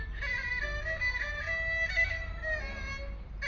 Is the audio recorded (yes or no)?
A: yes